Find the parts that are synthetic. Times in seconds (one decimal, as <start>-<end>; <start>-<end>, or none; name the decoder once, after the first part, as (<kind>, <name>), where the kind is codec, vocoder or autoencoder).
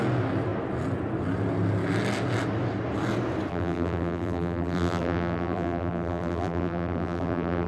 3.5-7.7 (vocoder, BigVGAN v2)